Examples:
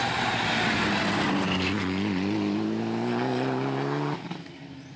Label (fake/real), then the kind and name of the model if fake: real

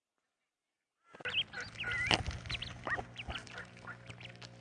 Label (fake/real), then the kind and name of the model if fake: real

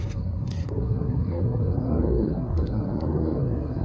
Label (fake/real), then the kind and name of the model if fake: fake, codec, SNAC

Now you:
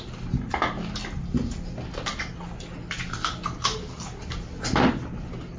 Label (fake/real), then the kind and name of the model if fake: real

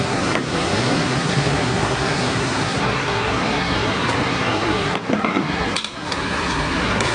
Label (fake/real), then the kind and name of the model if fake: fake, codec, SNAC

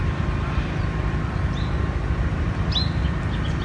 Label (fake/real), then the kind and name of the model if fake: real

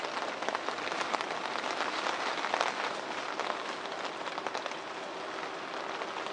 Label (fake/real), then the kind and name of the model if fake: real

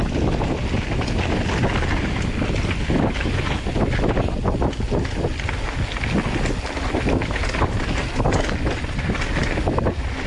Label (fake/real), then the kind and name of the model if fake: real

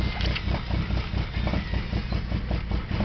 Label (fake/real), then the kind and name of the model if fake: real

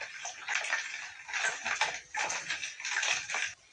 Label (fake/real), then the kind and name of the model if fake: real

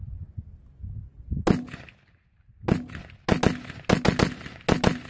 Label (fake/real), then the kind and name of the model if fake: real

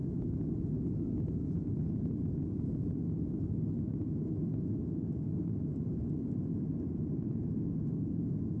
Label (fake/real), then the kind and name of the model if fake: real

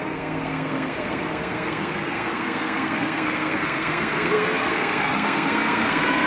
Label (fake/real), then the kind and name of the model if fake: fake, codec, SNAC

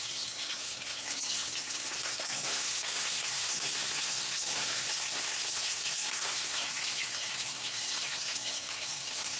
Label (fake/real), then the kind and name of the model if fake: fake, codec, SNAC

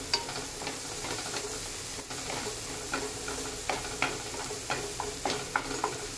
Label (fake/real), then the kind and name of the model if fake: real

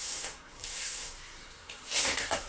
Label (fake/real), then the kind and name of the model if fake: fake, codec, SNAC